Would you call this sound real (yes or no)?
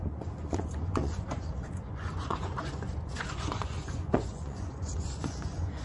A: no